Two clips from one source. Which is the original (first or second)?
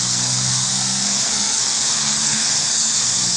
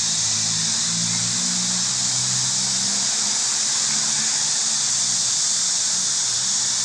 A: second